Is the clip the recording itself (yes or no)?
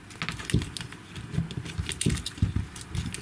yes